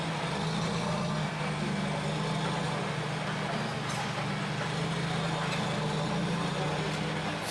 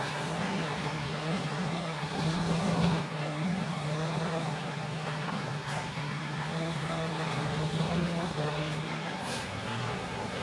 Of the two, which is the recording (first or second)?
first